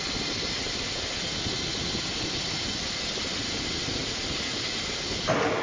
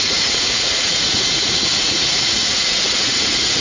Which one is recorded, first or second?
first